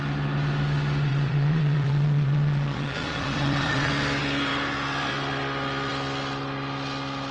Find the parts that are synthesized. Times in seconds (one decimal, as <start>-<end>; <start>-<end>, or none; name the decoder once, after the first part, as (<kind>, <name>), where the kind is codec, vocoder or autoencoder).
1.1-3.9 (vocoder, Vocos)